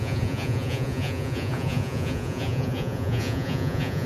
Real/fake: fake